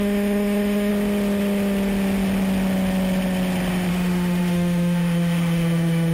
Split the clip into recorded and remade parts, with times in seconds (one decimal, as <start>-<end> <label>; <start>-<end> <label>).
0.0-0.9 remade; 0.9-3.9 recorded; 3.9-6.1 remade